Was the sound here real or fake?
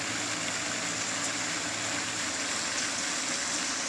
real